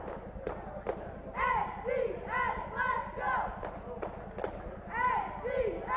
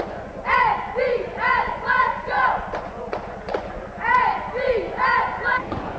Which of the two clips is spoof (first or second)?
second